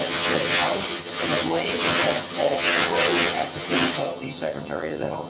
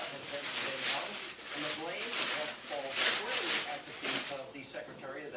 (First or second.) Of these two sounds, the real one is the second